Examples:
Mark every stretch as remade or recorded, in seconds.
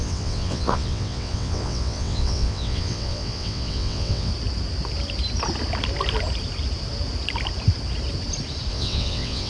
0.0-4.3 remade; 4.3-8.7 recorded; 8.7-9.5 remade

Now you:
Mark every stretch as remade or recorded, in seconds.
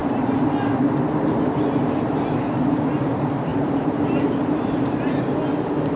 0.0-0.7 remade; 0.7-3.5 recorded; 3.5-5.2 remade; 5.2-6.0 recorded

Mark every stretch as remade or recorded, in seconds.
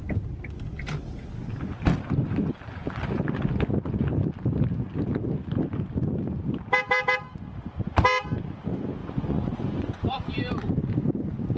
0.0-9.0 recorded; 9.0-10.3 remade; 10.3-11.6 recorded